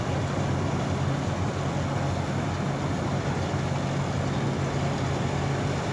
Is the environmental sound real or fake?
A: real